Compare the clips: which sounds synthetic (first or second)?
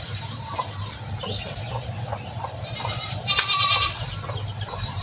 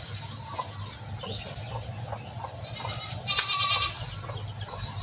first